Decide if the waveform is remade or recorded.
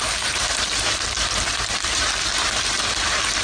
remade